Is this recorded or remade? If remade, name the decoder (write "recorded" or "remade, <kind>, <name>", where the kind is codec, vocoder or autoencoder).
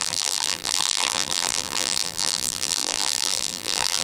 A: remade, vocoder, BigVGAN v2